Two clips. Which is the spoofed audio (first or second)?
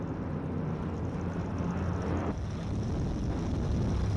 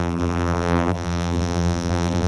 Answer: second